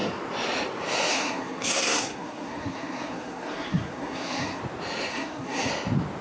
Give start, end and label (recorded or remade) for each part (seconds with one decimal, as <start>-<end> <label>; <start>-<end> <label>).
0.0-1.1 recorded; 1.1-4.6 remade; 4.6-5.1 recorded; 5.1-5.7 remade; 5.7-6.2 recorded